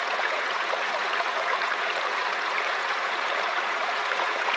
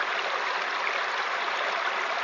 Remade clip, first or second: first